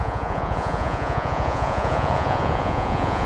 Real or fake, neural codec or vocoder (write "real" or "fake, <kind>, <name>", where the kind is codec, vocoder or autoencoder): fake, vocoder, Vocos